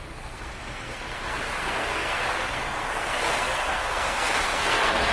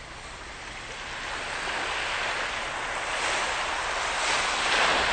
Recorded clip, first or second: second